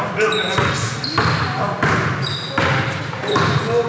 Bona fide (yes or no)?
yes